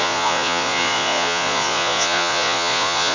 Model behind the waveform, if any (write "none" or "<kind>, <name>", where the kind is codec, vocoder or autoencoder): vocoder, Vocos